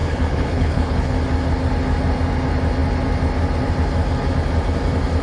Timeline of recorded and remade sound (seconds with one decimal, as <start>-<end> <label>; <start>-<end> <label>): 0.0-1.1 remade; 1.1-5.2 recorded